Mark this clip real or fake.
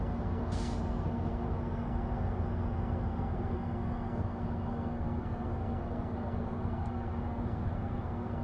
fake